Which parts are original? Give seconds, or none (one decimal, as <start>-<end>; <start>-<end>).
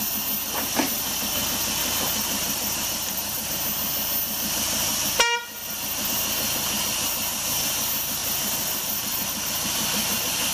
0.0-1.8; 3.5-5.6; 6.1-8.2; 9.5-10.5